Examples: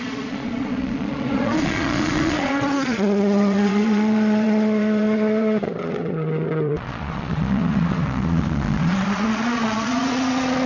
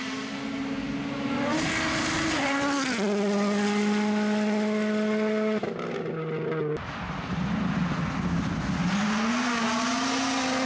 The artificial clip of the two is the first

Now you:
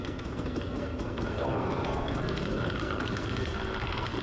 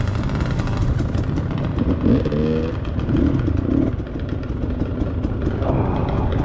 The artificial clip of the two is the first